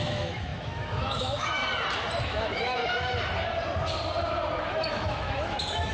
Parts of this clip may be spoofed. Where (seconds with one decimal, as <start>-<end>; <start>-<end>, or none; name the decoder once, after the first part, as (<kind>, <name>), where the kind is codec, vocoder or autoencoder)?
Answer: 0.0-1.6 (autoencoder, DAC-VAE); 2.2-2.8; 4.7-5.9